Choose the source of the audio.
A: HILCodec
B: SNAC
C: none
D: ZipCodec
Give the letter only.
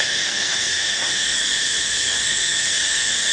B